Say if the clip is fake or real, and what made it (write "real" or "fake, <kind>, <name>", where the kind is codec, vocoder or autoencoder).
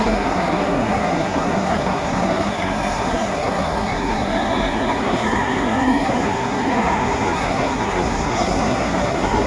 fake, codec, SNAC